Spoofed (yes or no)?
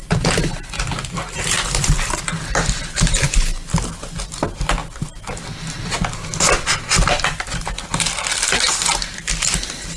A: no